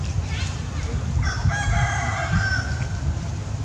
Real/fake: real